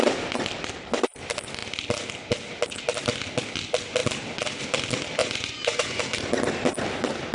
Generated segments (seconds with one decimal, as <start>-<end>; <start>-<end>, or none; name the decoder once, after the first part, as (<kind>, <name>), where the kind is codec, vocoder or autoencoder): 5.2-6.0 (vocoder, Vocos)